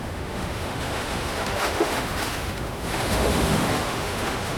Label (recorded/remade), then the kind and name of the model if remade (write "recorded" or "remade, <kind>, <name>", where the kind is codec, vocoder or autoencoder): remade, autoencoder, DAC-VAE